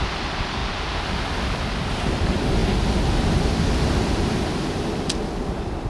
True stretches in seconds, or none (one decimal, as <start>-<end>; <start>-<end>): 0.0-5.9